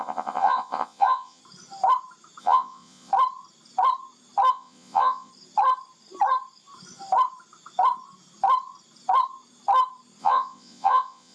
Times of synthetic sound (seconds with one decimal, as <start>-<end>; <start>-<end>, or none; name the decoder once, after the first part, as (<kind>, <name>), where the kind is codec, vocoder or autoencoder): 0.0-1.4 (vocoder, Vocos); 2.4-3.1; 4.5-5.3; 10.2-11.3